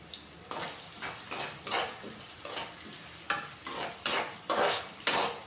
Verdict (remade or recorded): recorded